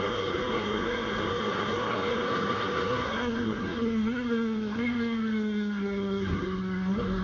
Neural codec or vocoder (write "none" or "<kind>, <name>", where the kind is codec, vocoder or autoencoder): codec, SNAC